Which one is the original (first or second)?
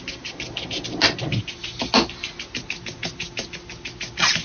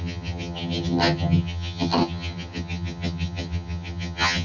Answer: first